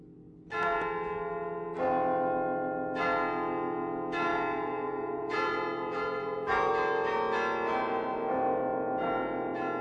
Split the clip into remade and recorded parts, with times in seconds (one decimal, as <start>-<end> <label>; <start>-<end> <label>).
0.0-4.3 recorded; 4.3-6.7 remade; 6.7-9.8 recorded